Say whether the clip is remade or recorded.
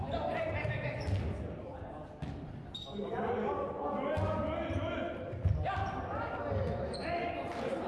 recorded